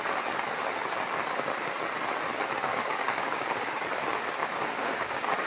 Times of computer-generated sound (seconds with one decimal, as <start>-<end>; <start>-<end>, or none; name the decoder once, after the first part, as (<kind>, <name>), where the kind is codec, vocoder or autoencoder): 2.7-3.5 (codec, DAC); 4.4-5.5